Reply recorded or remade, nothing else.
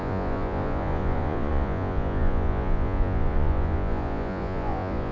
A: remade